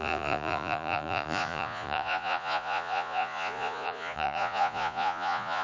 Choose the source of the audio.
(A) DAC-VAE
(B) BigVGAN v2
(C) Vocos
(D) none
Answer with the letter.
C